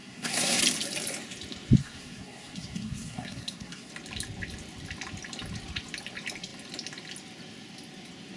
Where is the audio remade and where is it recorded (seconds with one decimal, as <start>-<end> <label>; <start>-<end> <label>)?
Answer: 0.0-0.6 remade; 0.6-1.8 recorded; 1.8-3.9 remade; 3.9-8.4 recorded